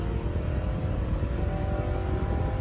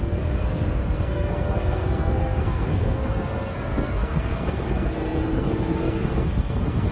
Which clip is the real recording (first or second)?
first